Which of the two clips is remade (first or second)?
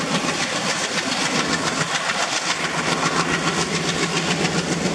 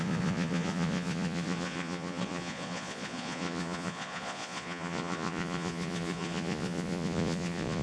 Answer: second